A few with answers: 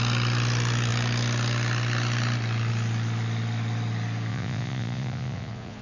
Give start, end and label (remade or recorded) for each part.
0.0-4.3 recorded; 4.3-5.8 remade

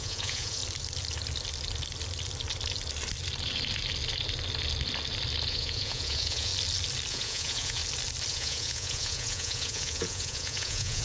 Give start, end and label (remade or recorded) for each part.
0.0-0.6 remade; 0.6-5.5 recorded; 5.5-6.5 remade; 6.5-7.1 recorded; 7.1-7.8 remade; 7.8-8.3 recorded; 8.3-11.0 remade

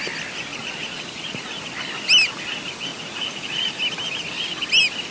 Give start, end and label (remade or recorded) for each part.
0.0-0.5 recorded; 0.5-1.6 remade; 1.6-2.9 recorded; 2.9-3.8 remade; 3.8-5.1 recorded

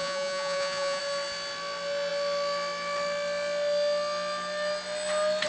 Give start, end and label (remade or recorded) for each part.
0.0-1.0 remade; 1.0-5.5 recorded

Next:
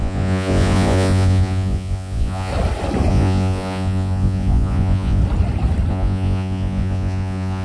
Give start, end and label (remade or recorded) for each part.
0.0-2.5 remade; 2.5-3.1 recorded; 3.1-5.2 remade; 5.2-5.9 recorded; 5.9-7.6 remade

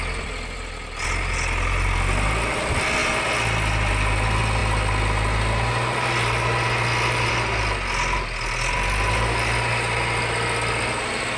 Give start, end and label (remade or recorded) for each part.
0.0-11.4 recorded